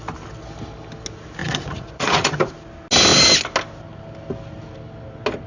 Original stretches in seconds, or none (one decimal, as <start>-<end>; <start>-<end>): 0.0-1.4; 2.3-5.5